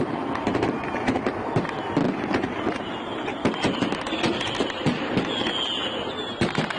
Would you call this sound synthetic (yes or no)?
no